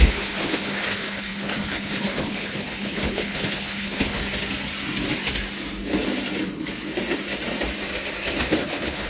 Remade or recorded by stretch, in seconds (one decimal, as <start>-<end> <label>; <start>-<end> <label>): 0.0-4.2 remade; 4.2-8.4 recorded; 8.4-9.1 remade